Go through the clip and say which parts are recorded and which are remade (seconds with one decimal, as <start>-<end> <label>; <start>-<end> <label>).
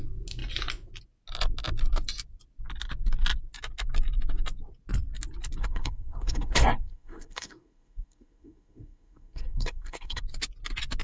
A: 0.0-5.6 recorded; 5.6-10.2 remade; 10.2-11.0 recorded